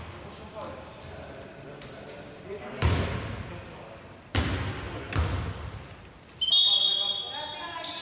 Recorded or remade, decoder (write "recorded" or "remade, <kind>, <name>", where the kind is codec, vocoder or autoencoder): recorded